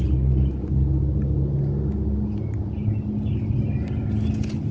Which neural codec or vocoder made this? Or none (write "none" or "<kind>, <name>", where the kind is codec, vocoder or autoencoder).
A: none